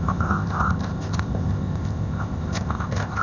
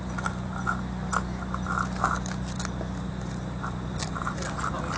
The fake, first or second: first